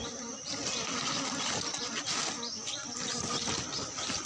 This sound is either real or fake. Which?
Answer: fake